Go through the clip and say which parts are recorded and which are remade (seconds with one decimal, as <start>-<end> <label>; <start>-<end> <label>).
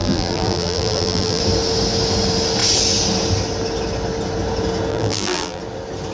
0.0-1.4 remade; 1.4-4.9 recorded; 4.9-5.6 remade; 5.6-6.1 recorded